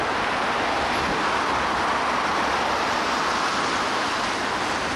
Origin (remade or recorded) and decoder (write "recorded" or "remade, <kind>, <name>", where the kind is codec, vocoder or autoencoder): recorded